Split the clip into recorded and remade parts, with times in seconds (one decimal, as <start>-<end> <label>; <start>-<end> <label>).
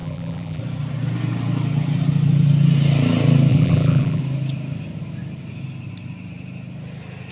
0.0-0.6 remade; 0.6-3.5 recorded; 3.5-4.2 remade; 4.2-7.3 recorded